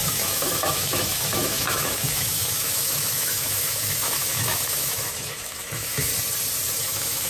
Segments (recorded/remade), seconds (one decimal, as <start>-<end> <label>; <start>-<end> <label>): 0.0-6.1 remade; 6.1-6.8 recorded; 6.8-7.3 remade